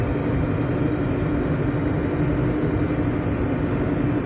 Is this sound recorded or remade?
recorded